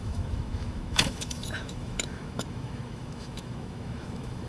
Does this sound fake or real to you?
fake